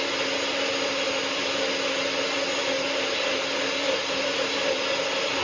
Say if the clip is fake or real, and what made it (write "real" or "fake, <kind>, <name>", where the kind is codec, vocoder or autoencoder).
real